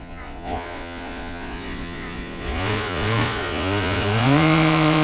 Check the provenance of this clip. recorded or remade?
remade